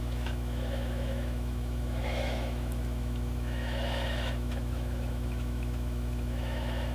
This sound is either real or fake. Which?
fake